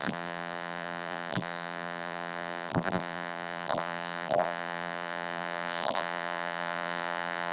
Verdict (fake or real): fake